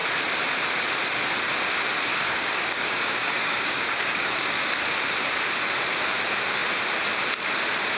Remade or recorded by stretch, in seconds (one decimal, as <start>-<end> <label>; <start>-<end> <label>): 0.0-2.1 recorded; 2.1-4.5 remade; 4.5-8.0 recorded